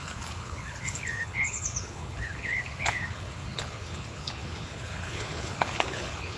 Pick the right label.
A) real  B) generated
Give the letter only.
B